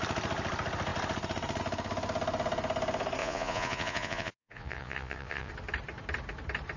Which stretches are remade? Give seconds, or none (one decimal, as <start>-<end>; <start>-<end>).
3.2-5.5